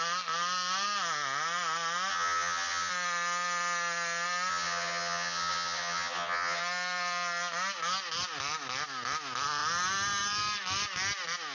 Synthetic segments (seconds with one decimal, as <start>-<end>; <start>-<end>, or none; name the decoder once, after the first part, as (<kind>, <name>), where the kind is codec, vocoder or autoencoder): 2.1-2.9 (vocoder, HiFi-GAN); 4.5-6.6